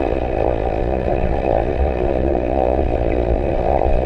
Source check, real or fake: fake